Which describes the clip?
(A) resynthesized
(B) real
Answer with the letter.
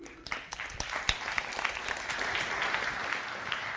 B